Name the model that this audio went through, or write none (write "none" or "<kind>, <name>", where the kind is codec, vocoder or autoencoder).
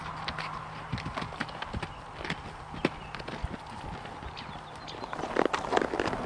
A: none